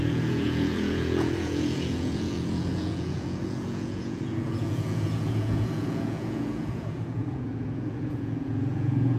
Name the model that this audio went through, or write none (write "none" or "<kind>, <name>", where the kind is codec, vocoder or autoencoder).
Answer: vocoder, Vocos